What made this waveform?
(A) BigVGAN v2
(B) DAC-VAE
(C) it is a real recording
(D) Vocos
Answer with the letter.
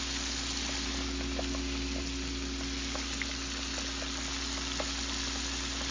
C